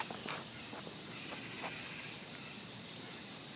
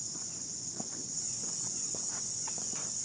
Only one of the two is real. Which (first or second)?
first